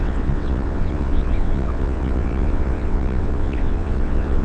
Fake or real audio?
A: fake